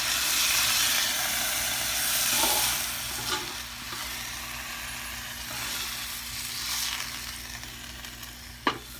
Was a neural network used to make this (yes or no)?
no